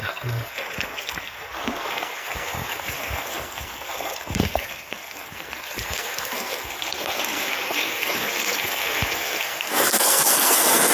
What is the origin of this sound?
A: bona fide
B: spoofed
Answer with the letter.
B